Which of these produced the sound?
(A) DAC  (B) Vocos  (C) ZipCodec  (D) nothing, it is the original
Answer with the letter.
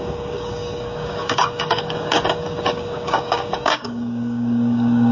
A